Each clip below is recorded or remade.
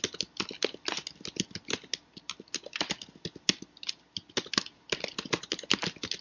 recorded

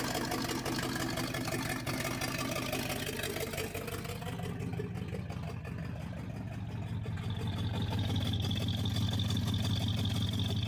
recorded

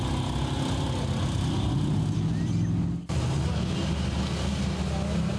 recorded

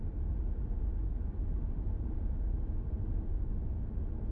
recorded